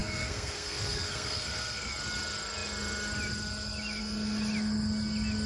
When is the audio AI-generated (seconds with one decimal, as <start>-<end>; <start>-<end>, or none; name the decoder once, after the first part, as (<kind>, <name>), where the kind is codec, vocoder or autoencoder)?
0.0-1.9 (codec, SNAC)